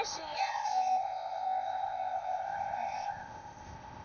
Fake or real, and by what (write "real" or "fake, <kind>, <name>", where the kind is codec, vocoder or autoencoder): fake, codec, ZipCodec